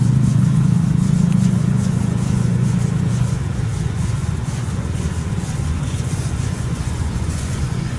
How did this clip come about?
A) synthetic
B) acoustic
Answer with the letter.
A